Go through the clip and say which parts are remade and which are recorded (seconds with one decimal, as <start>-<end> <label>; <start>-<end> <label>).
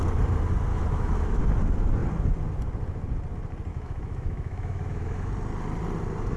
0.0-0.7 recorded; 0.7-1.4 remade; 1.4-3.7 recorded; 3.7-5.3 remade; 5.3-6.4 recorded